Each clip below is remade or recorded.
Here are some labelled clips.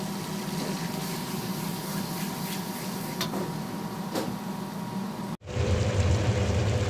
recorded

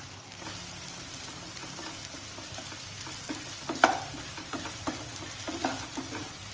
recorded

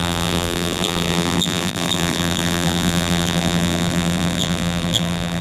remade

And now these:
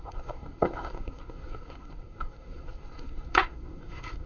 remade